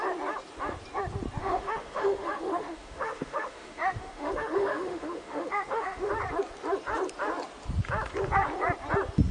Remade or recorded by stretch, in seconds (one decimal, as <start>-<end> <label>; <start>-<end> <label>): 0.0-1.4 recorded; 1.4-6.1 remade; 6.1-9.3 recorded